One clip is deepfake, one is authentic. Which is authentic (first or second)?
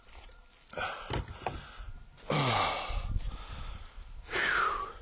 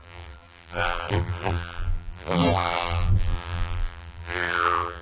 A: first